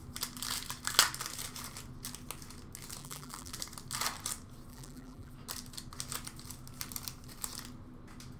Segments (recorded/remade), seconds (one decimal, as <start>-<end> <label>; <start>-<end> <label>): 0.0-3.0 recorded; 3.0-3.5 remade; 3.5-4.7 recorded; 4.7-5.3 remade; 5.3-8.4 recorded